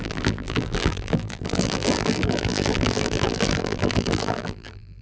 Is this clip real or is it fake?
fake